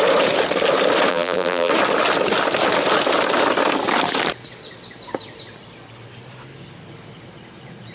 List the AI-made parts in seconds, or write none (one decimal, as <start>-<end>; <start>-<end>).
1.1-1.7